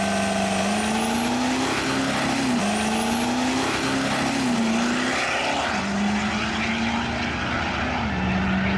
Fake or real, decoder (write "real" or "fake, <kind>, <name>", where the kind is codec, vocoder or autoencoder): real